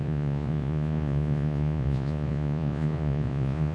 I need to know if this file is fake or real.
fake